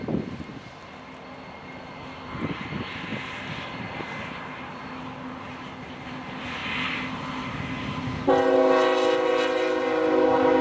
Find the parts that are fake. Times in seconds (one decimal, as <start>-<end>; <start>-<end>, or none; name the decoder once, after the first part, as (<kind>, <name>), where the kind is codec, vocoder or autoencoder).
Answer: none